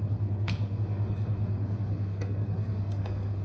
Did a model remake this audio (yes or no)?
yes